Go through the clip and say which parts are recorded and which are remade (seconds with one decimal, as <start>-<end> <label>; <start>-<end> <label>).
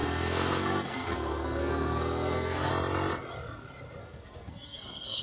0.0-2.7 remade; 2.7-4.0 recorded; 4.0-5.2 remade